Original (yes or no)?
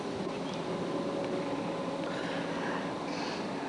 yes